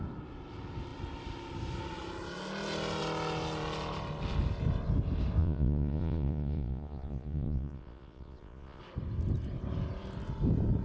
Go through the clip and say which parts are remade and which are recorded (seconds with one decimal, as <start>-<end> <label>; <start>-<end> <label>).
0.0-5.4 recorded; 5.4-8.8 remade; 8.8-10.8 recorded